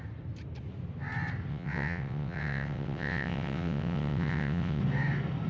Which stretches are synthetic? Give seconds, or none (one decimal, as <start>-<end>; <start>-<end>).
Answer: 1.5-4.8

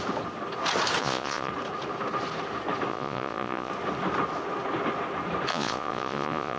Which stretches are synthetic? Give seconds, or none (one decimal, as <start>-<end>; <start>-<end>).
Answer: 1.0-1.5; 2.9-3.7; 5.5-6.6

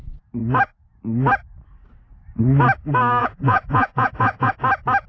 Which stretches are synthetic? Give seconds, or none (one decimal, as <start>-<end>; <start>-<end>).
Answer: 3.2-4.5

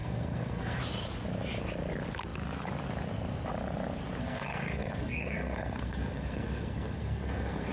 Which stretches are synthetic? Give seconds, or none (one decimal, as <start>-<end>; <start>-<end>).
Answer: 0.0-0.8; 4.2-7.7